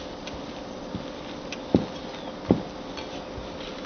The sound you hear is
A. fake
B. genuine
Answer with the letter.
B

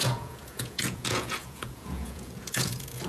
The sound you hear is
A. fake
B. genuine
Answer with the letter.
A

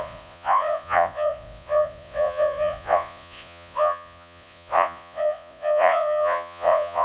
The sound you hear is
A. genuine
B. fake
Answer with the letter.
B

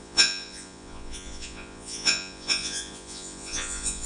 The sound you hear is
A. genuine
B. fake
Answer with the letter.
B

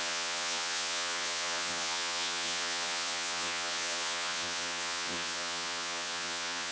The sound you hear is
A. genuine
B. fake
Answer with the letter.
B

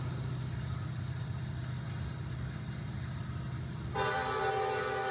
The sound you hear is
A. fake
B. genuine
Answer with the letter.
B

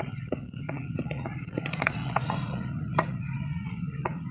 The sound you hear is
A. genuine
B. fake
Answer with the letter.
B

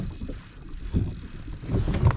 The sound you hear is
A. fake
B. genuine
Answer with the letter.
B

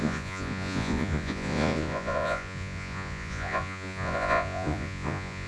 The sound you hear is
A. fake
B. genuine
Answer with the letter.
A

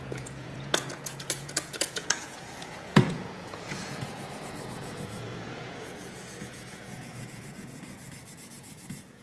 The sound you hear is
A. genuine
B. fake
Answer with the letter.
B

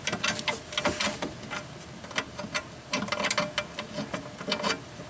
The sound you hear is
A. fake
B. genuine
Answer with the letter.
B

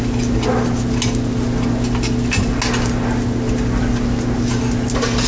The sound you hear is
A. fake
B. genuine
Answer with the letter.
B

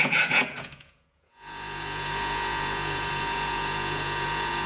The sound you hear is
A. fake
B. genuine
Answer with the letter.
A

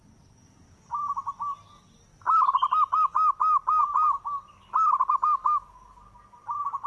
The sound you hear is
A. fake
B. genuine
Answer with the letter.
B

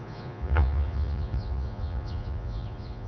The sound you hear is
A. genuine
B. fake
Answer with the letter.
B